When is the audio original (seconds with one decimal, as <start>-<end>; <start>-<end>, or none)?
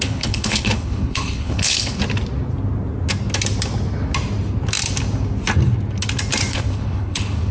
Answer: 2.0-6.5